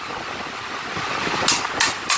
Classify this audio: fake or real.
real